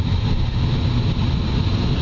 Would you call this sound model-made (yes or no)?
no